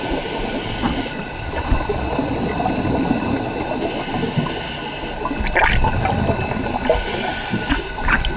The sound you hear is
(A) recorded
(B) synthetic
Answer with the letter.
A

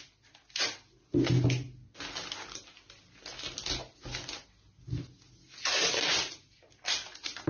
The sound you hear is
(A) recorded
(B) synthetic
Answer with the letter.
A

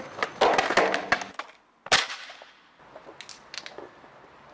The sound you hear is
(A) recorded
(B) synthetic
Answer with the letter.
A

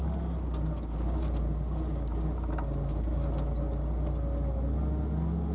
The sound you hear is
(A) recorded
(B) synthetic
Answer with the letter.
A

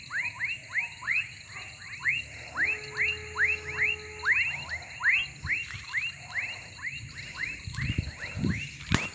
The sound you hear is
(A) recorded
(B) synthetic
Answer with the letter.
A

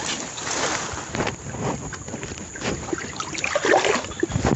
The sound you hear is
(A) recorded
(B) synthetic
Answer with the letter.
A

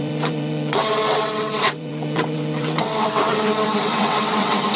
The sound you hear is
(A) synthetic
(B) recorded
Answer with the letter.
A